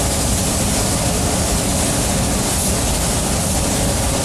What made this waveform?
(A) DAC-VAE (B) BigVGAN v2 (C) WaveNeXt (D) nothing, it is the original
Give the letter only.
D